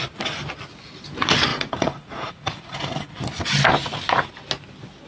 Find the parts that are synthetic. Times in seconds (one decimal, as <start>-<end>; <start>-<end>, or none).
1.5-3.1